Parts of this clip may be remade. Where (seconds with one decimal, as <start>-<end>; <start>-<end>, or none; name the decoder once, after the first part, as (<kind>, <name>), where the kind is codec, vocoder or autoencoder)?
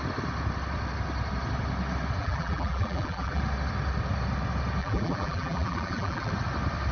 2.2-3.4 (vocoder, BigVGAN v2); 4.8-6.3